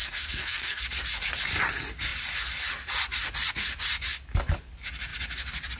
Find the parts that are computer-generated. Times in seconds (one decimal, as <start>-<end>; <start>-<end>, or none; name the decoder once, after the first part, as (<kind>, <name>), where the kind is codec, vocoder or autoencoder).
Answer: 0.0-0.8 (codec, SNAC)